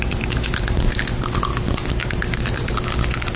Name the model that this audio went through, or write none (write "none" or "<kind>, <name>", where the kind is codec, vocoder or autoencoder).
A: none